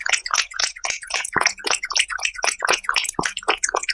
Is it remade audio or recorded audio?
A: remade